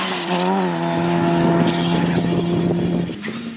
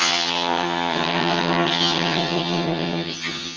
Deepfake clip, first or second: second